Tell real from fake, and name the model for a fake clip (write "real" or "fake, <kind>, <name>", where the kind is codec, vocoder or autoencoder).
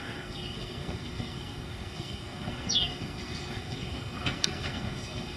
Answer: fake, codec, SNAC